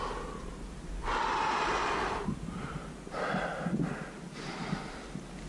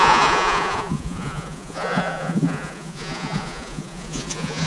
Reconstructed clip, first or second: second